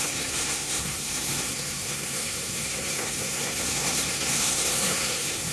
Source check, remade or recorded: remade